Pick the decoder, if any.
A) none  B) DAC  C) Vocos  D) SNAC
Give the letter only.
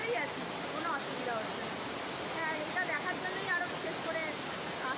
A